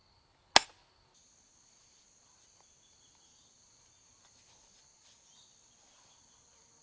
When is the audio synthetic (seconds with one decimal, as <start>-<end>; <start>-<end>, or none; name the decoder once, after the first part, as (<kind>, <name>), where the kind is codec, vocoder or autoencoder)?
none